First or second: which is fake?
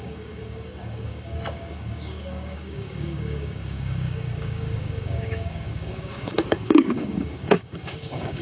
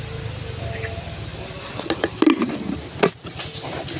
first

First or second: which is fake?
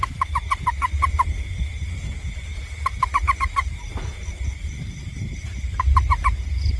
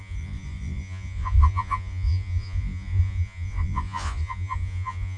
second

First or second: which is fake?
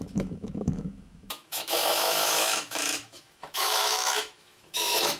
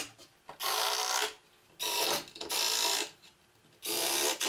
first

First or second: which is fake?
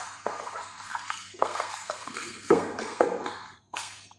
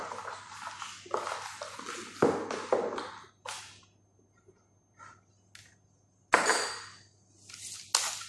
first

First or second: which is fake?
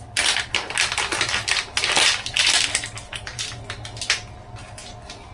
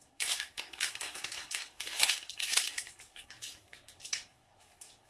second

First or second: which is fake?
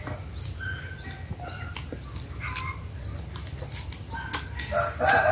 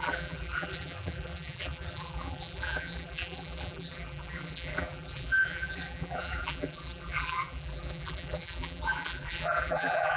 second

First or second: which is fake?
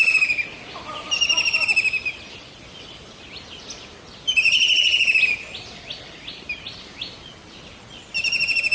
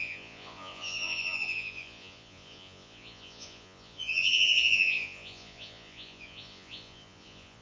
second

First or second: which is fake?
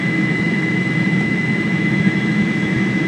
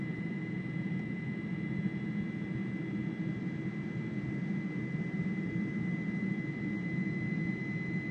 first